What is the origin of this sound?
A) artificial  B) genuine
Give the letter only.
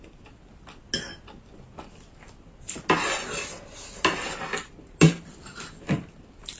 B